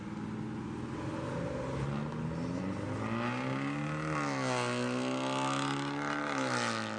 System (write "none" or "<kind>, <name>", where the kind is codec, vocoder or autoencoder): none